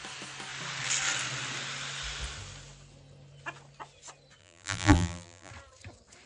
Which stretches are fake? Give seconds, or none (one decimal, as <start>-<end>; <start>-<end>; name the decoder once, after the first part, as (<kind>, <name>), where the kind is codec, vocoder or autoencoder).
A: 4.4-5.5 (vocoder, BigVGAN v2)